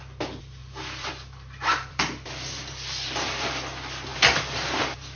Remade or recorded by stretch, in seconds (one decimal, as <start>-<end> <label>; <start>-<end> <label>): 0.0-0.6 recorded; 0.6-3.5 remade; 3.5-5.2 recorded